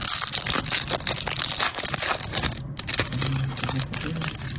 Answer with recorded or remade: recorded